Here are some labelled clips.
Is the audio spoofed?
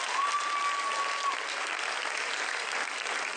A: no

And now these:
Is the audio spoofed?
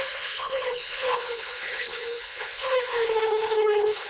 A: yes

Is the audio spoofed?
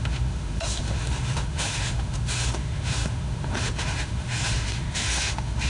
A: yes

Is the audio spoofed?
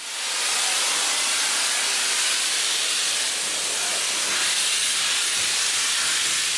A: no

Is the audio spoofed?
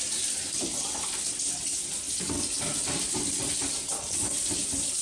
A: no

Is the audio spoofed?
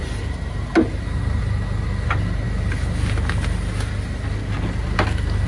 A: no